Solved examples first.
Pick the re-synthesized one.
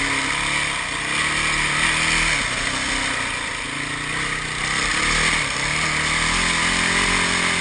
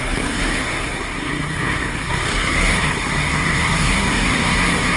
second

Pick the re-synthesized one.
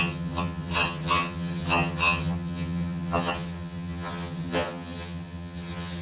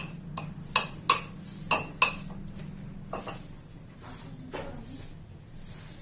first